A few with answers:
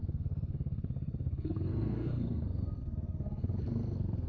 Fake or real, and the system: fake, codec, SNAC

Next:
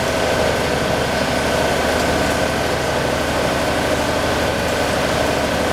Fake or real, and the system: real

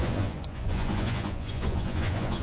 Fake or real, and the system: fake, vocoder, Vocos